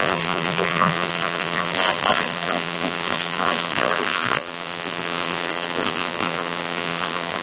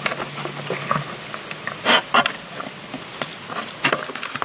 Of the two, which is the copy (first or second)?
first